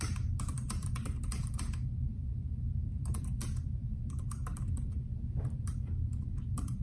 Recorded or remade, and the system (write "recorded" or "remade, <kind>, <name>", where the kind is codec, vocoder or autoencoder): remade, vocoder, BigVGAN v2